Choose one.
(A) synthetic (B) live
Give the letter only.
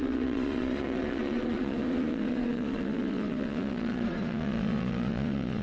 A